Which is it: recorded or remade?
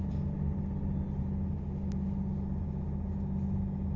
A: recorded